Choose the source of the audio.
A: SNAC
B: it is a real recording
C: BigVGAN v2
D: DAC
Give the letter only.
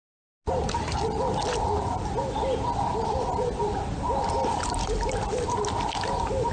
B